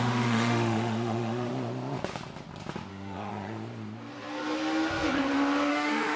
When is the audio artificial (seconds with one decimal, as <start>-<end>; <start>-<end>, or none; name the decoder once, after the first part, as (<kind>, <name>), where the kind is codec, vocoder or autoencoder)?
0.0-1.5 (autoencoder, DAC-VAE); 2.9-3.3; 5.7-6.2